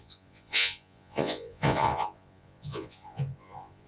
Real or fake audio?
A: fake